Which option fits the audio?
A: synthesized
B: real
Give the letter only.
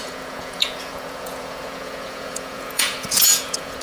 A